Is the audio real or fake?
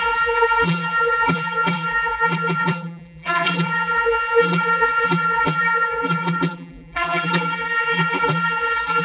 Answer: fake